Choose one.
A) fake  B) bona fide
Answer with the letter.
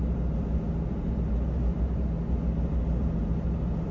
B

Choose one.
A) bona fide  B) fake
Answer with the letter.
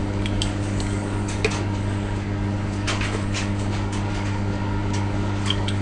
B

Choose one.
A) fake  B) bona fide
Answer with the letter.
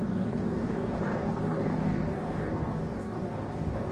A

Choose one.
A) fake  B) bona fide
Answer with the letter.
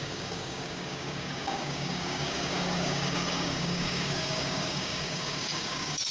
A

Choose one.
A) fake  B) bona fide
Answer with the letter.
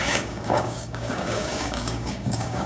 A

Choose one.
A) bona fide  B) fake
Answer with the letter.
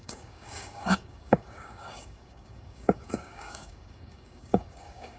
B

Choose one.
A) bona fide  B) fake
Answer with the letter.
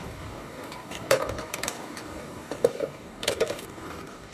B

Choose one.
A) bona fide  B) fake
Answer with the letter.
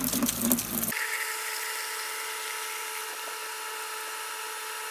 A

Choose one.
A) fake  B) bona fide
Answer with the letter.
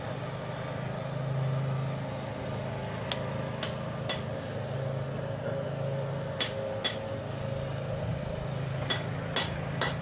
B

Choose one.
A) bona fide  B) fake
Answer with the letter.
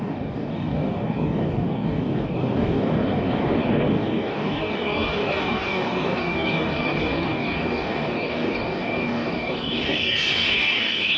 B